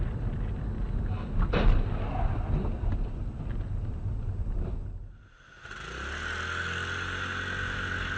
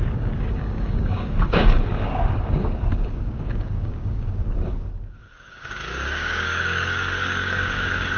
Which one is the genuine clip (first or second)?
first